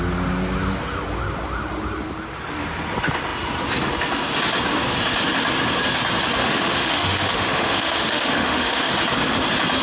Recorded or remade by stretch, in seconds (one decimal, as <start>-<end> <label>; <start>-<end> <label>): 0.0-6.4 recorded; 6.4-8.9 remade; 8.9-9.8 recorded